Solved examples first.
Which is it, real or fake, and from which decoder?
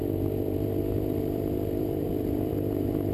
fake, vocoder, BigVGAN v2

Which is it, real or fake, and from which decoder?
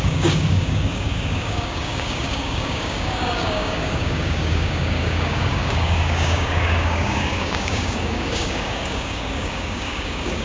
fake, codec, DAC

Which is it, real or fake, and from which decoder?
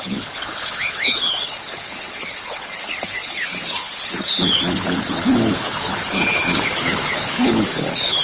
fake, codec, HILCodec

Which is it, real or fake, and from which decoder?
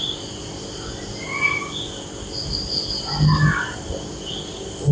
real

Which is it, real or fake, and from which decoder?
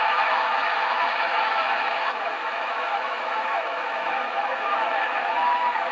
fake, autoencoder, DAC-VAE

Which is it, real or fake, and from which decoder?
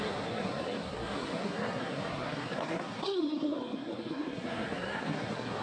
fake, codec, SNAC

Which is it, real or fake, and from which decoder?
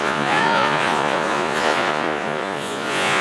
fake, vocoder, Vocos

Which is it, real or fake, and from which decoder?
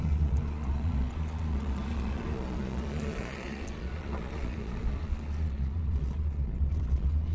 fake, vocoder, Vocos